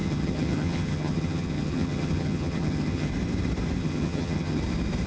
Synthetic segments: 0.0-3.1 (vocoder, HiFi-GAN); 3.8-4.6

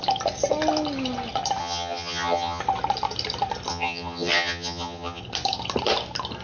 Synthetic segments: 1.6-2.6 (vocoder, HiFi-GAN); 3.7-5.2

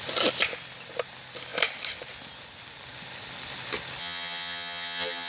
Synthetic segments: 4.0-5.3 (vocoder, HiFi-GAN)

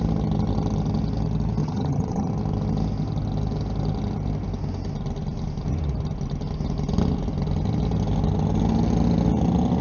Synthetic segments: 1.6-2.3 (vocoder, HiFi-GAN)

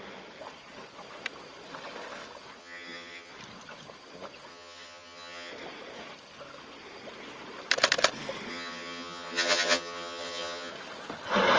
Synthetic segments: 2.6-3.3 (vocoder, HiFi-GAN); 4.5-5.5; 8.5-10.7

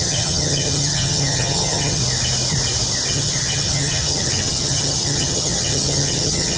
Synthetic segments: 0.0-2.0 (vocoder, HiFi-GAN); 3.1-6.6

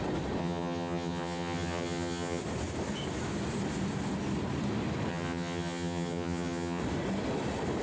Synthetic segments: 0.4-2.4 (vocoder, HiFi-GAN); 5.1-6.8